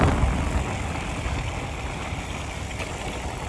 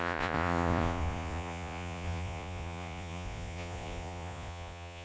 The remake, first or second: second